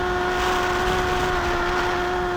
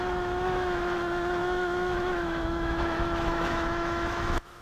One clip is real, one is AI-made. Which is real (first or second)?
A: first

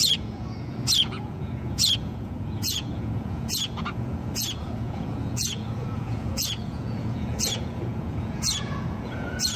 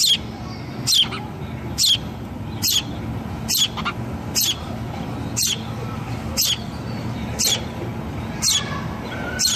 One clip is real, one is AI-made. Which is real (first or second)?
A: second